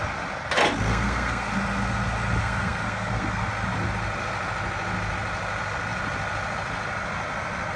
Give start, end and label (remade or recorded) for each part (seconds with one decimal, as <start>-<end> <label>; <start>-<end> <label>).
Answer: 0.0-0.9 recorded; 0.9-1.5 remade; 1.5-2.4 recorded; 2.4-3.5 remade; 3.5-7.8 recorded